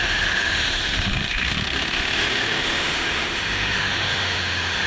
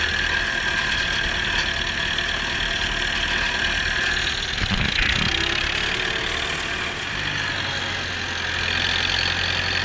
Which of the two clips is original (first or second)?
second